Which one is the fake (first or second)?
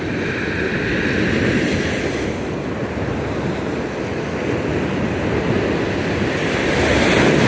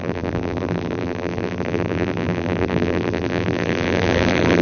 second